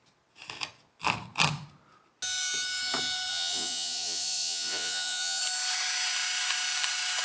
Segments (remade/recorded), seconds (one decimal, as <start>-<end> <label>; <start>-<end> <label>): 0.0-3.3 recorded; 3.3-5.4 remade; 5.4-7.2 recorded